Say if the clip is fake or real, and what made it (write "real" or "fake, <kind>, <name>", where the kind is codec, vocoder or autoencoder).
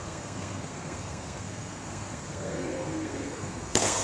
fake, codec, SNAC